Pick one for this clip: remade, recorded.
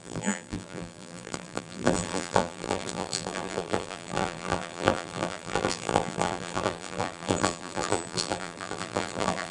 remade